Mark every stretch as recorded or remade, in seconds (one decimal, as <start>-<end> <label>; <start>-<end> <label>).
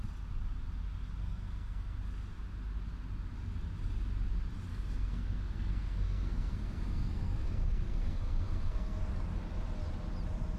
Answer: 0.0-1.2 recorded; 1.2-2.0 remade; 2.0-4.7 recorded; 4.7-9.0 remade; 9.0-10.6 recorded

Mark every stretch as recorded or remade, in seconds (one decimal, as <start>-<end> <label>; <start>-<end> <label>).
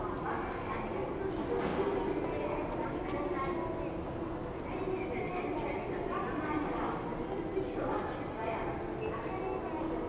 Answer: 0.0-10.1 recorded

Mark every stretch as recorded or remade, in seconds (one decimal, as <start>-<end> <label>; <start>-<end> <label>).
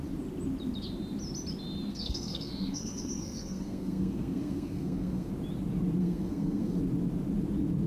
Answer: 0.0-1.9 recorded; 1.9-5.3 remade; 5.3-6.0 recorded; 6.0-6.8 remade; 6.8-7.9 recorded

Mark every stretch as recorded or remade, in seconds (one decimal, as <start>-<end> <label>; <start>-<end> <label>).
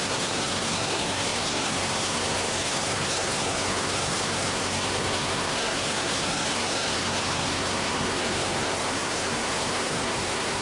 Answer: 0.0-10.6 remade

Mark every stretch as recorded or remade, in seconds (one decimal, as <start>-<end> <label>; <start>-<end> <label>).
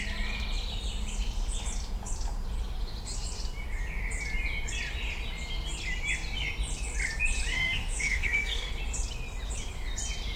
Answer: 0.0-7.5 recorded; 7.5-8.7 remade; 8.7-10.4 recorded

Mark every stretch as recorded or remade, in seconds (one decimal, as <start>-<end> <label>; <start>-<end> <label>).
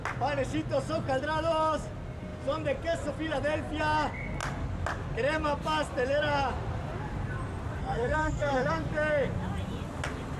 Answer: 0.0-7.8 recorded; 7.8-8.7 remade; 8.7-10.4 recorded